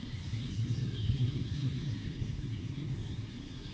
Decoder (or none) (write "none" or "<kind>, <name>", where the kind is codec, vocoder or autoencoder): codec, SNAC